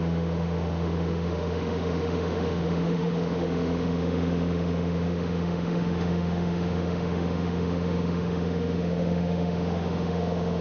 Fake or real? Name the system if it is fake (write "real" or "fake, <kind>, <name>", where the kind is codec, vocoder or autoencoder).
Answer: fake, autoencoder, DAC-VAE